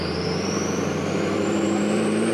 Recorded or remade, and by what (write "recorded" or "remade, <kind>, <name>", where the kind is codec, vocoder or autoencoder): remade, vocoder, BigVGAN v2